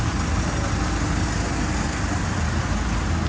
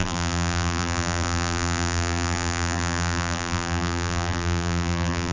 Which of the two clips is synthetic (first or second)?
second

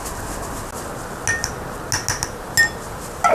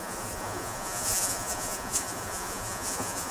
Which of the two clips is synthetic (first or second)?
second